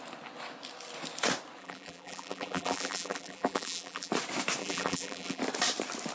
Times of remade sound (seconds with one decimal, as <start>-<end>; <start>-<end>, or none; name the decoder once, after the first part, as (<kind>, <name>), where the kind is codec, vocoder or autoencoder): 1.6-4.1 (vocoder, BigVGAN v2); 4.6-5.4